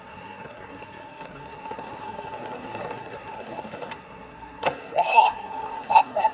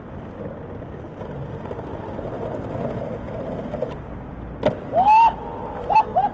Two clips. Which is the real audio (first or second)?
second